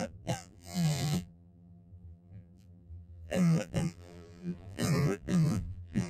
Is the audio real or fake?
fake